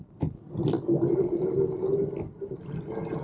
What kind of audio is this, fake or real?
real